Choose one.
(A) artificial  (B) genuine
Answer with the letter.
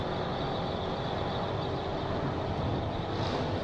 B